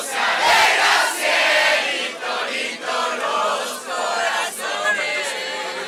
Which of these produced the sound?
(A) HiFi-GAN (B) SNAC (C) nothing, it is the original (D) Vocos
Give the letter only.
C